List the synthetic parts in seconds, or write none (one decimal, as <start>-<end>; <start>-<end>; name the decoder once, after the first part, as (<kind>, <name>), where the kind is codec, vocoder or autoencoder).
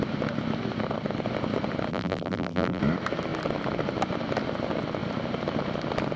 1.9-2.8 (vocoder, BigVGAN v2)